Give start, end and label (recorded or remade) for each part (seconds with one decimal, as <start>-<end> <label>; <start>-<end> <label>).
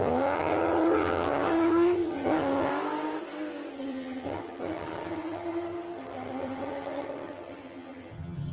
0.0-2.7 remade; 2.7-3.7 recorded; 3.7-8.5 remade